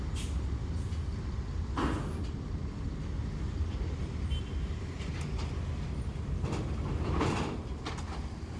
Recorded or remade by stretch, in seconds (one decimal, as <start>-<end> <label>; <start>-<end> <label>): 0.0-8.6 recorded